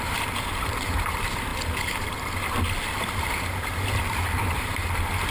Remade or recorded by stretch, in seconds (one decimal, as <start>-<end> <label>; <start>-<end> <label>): 0.0-1.5 remade; 1.5-3.6 recorded; 3.6-5.3 remade